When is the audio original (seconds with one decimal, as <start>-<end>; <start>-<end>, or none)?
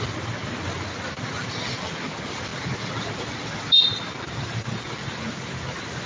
0.0-6.1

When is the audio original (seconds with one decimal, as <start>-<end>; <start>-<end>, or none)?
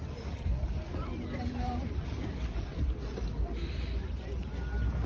0.0-1.4; 4.5-5.1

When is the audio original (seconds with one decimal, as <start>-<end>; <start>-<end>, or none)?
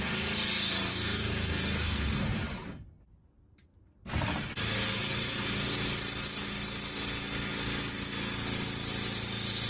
0.0-0.9; 2.2-9.7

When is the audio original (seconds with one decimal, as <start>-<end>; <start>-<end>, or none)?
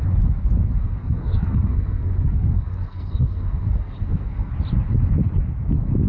0.0-0.8; 4.5-6.1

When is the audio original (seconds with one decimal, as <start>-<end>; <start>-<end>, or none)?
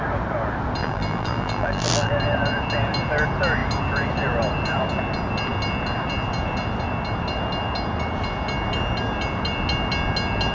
0.0-0.8; 2.1-10.5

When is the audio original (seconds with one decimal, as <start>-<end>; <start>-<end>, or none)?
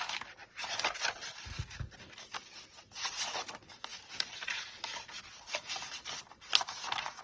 0.0-0.4; 1.3-3.9; 6.2-7.2